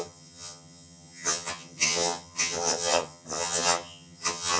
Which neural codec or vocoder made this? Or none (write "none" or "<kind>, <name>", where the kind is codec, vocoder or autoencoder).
vocoder, HiFi-GAN